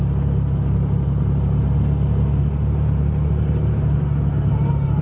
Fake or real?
real